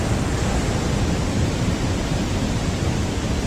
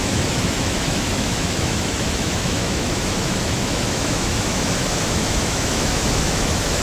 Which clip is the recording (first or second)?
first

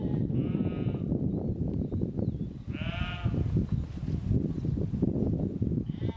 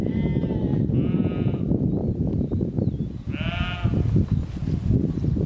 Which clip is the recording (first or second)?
second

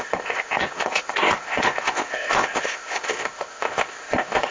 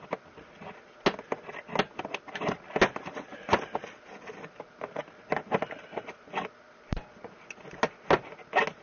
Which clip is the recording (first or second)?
second